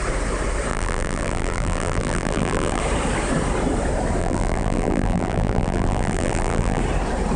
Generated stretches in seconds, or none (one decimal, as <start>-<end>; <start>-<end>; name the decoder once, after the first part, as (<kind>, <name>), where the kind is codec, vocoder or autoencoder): 0.7-2.8 (vocoder, BigVGAN v2); 4.2-6.8

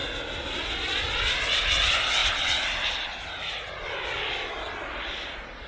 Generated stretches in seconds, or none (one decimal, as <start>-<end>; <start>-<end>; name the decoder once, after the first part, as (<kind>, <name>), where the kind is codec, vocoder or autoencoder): none

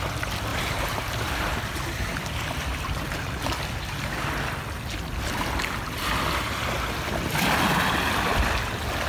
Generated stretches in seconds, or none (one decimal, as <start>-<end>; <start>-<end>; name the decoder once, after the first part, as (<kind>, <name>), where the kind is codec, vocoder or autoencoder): 0.5-1.3 (vocoder, BigVGAN v2)

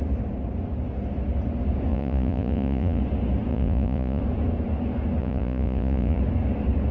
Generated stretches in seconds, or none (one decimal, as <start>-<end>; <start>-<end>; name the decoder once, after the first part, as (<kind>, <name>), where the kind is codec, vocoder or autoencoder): 1.9-3.0 (vocoder, Vocos); 3.5-4.2; 5.2-6.2